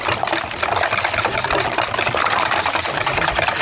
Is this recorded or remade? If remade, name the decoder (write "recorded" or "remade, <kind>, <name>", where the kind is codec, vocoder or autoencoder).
recorded